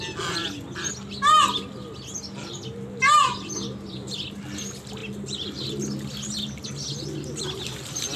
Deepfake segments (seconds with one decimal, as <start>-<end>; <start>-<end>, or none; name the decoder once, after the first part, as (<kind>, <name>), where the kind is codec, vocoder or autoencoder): 0.4-0.9 (vocoder, BigVGAN v2)

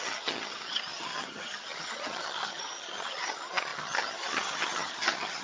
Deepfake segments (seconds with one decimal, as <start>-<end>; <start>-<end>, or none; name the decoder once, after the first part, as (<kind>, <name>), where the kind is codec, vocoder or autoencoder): 0.0-5.4 (vocoder, HiFi-GAN)

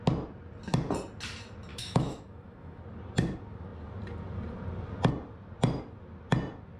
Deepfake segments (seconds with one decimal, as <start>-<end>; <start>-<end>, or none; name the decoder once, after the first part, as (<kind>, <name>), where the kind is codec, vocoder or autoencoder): 1.7-2.8 (autoencoder, DAC-VAE)

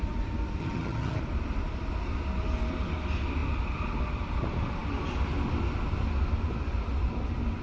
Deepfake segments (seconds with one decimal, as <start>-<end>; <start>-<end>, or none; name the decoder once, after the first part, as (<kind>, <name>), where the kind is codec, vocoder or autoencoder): 0.6-1.2 (vocoder, HiFi-GAN)

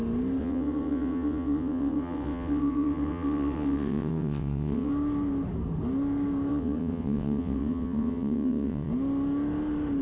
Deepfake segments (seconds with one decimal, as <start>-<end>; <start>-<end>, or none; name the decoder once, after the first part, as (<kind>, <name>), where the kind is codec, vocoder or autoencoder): 0.4-4.9 (vocoder, WaveNeXt); 6.5-8.9

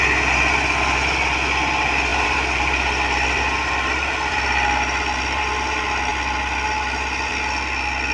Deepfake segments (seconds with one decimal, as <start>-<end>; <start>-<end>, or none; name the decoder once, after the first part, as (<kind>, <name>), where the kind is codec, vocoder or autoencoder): 2.1-5.4 (vocoder, BigVGAN v2)

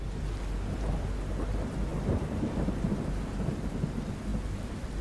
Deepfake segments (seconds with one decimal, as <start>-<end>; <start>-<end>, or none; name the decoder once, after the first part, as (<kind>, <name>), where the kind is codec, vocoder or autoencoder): none

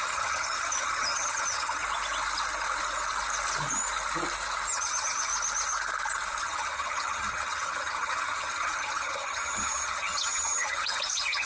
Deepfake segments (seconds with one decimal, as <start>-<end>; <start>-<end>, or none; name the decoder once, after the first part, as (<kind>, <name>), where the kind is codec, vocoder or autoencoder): 0.0-1.8 (vocoder, HiFi-GAN); 4.7-5.3; 6.4-11.5